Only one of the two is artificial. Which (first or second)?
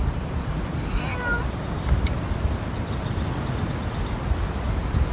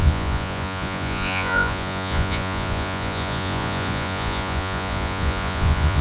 second